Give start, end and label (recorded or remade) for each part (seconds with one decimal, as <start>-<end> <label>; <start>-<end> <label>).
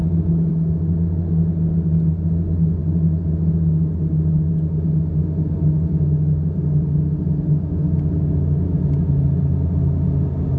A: 0.0-0.5 remade; 0.5-10.6 recorded